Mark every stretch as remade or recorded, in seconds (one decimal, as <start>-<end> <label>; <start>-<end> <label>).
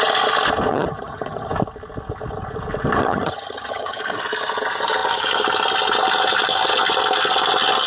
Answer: 0.0-0.7 recorded; 0.7-1.5 remade; 1.5-3.0 recorded; 3.0-4.0 remade; 4.0-7.9 recorded